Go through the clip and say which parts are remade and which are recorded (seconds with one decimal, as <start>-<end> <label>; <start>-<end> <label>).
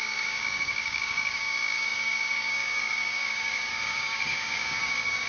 0.0-5.3 remade